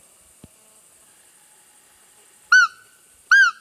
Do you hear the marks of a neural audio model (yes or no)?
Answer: no